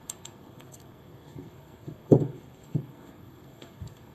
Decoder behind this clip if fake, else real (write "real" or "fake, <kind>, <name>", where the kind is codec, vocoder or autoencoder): fake, codec, SNAC